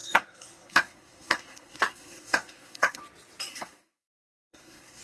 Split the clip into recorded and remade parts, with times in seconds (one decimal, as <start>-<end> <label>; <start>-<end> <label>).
0.0-3.0 remade; 3.0-3.5 recorded; 3.5-5.0 remade